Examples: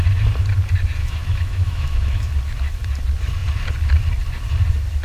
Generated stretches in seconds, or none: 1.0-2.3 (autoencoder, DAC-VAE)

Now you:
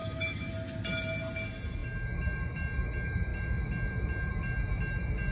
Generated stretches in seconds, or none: 0.0-0.5 (autoencoder, DAC-VAE)

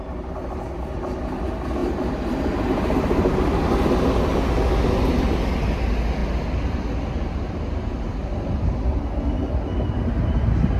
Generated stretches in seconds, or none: none

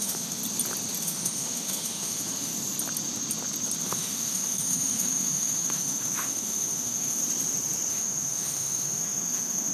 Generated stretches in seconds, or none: 0.0-0.4 (autoencoder, DAC-VAE); 1.0-2.5; 3.8-7.2; 7.9-9.7

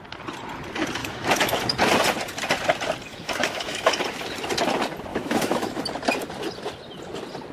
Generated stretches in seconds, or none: 1.0-1.6 (autoencoder, DAC-VAE); 3.1-4.0; 5.1-5.8

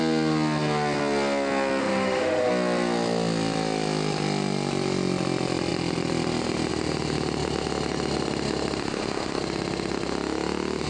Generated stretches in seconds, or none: 1.8-2.5 (autoencoder, DAC-VAE); 8.8-9.4

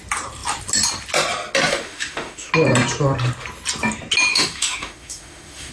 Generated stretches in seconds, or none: 1.7-2.5 (autoencoder, DAC-VAE); 4.3-5.7

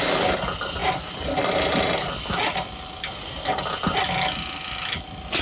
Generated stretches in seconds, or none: none